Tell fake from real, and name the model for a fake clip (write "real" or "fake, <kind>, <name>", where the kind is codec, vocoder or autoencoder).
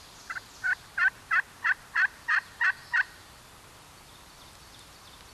real